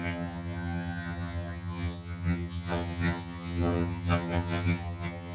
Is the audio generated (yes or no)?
yes